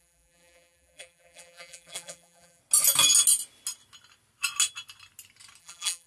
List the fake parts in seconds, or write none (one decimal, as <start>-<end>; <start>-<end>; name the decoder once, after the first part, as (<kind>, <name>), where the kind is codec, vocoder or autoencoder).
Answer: 0.0-2.6 (vocoder, BigVGAN v2); 5.6-6.1